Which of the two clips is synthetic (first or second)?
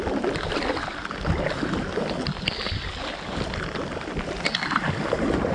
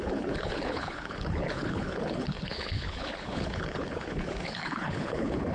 second